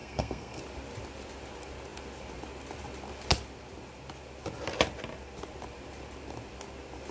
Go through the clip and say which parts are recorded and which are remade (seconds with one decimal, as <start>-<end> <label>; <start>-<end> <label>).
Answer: 0.0-0.6 remade; 0.6-7.1 recorded